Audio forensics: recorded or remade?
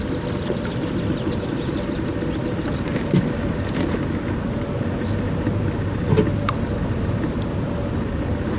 recorded